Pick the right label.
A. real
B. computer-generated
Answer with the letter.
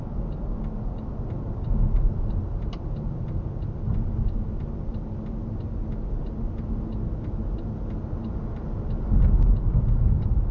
A